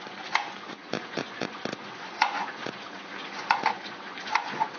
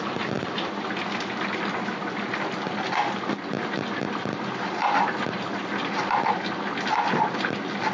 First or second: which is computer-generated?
first